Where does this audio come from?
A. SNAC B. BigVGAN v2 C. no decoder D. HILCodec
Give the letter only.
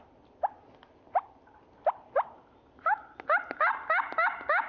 C